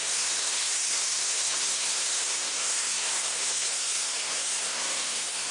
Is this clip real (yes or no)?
no